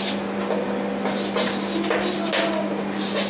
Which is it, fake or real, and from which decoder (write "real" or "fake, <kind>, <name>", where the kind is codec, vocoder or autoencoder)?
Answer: real